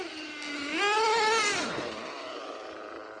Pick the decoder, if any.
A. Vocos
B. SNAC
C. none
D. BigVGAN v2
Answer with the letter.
C